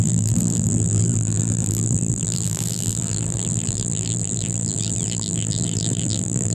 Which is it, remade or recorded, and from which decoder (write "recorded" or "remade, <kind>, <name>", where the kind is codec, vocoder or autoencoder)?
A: remade, vocoder, BigVGAN v2